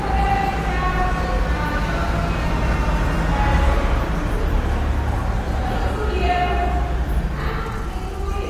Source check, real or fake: real